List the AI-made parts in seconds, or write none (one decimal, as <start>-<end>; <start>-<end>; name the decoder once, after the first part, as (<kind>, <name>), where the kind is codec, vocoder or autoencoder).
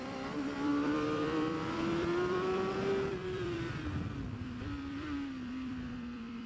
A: 0.0-6.5 (vocoder, BigVGAN v2)